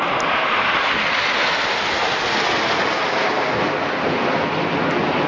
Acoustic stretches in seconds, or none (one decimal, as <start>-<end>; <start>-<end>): 0.0-5.3